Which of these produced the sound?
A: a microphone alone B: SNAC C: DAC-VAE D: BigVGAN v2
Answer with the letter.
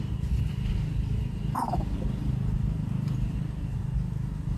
A